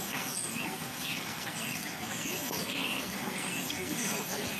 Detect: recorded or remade remade